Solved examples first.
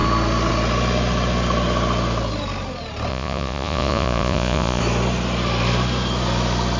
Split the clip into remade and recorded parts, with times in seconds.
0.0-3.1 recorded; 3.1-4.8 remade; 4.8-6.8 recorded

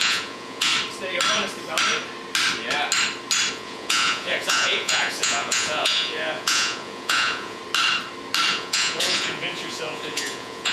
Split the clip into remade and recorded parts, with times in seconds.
0.0-0.7 remade; 0.7-3.5 recorded; 3.5-7.6 remade; 7.6-8.5 recorded; 8.5-10.7 remade